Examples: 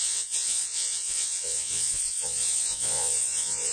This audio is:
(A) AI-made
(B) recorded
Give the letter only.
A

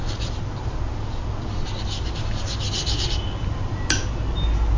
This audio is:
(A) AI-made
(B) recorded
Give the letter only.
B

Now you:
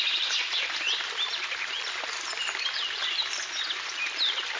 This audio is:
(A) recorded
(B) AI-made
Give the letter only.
A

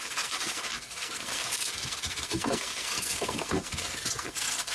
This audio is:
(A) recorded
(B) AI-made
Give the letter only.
B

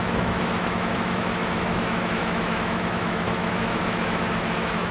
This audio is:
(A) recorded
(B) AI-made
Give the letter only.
B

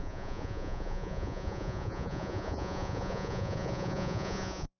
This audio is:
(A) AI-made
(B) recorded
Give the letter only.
A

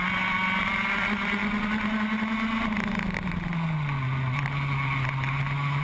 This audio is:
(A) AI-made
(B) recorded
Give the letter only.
B